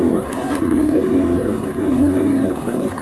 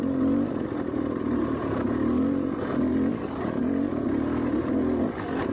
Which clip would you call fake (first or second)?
first